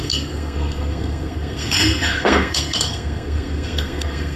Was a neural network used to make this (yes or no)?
yes